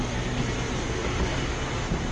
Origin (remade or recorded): recorded